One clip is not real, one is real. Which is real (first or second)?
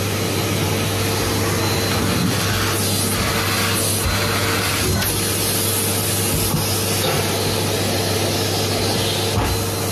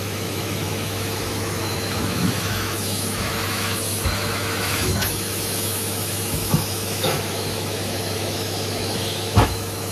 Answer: first